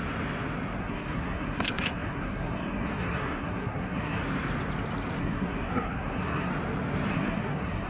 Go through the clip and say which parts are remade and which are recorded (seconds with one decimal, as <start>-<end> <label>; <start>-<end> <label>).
0.0-0.8 recorded; 0.8-4.2 remade; 4.2-5.2 recorded; 5.2-6.5 remade; 6.5-7.1 recorded; 7.1-7.9 remade